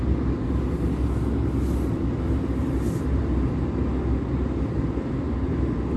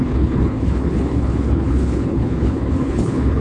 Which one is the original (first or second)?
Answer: first